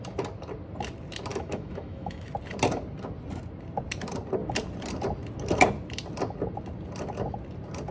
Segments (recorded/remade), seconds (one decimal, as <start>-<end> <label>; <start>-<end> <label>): 0.0-1.3 recorded; 1.3-2.3 remade; 2.3-7.9 recorded